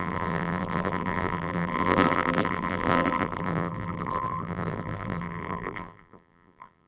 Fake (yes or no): yes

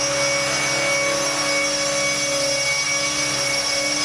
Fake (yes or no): no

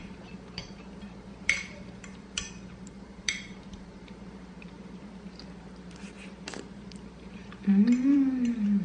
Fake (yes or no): yes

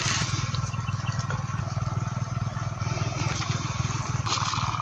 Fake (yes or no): no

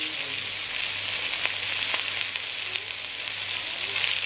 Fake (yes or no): no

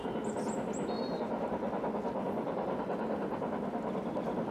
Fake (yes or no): no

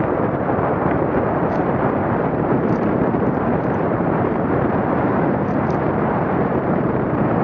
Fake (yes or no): yes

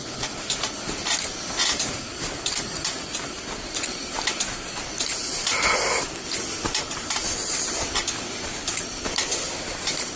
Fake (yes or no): no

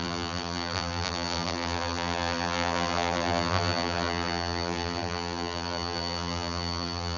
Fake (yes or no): yes